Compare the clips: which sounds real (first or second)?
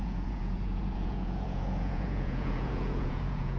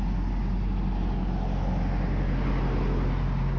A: second